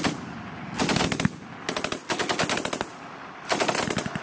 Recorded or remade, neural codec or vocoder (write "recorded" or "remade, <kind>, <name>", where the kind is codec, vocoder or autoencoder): recorded